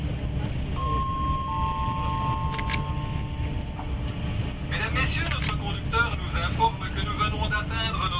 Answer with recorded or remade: recorded